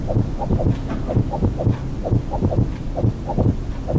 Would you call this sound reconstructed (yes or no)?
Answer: yes